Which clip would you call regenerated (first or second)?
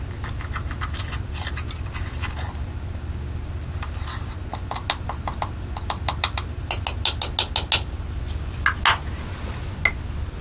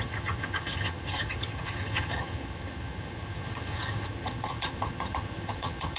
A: second